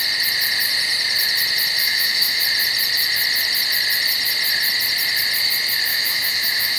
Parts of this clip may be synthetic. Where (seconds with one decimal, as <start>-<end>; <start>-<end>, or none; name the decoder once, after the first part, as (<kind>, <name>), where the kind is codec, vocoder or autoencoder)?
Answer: 1.8-2.4 (autoencoder, DAC-VAE); 5.9-6.8